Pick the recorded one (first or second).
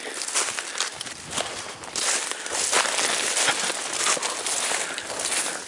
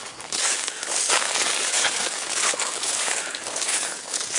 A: first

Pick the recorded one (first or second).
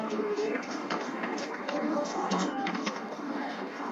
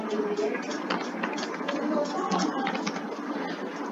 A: second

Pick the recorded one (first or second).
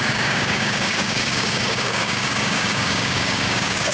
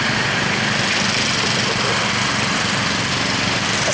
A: second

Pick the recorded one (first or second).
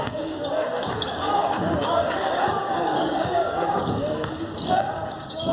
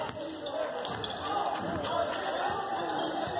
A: second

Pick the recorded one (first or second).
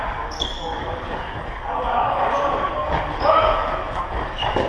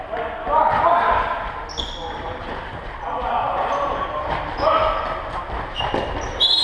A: second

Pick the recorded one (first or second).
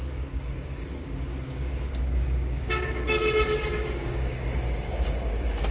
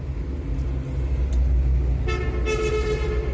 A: second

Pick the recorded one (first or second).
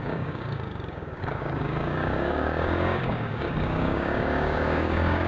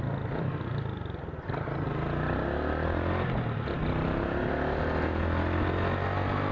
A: second